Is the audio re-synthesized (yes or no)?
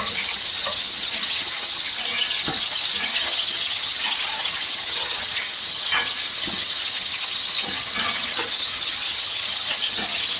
yes